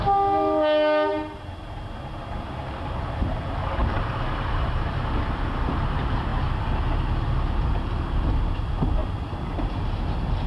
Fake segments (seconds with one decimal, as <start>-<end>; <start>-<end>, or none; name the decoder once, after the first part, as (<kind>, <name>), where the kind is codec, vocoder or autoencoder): 3.8-4.9 (vocoder, BigVGAN v2)